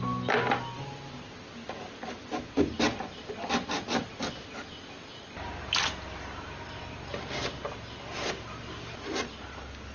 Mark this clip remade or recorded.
recorded